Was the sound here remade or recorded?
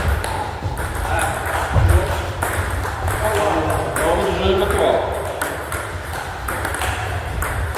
remade